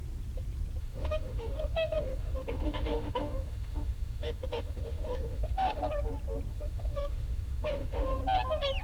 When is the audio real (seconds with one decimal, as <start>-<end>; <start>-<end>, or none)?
0.0-0.8; 5.8-6.5; 8.2-8.8